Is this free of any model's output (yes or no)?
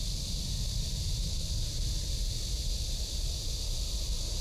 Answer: yes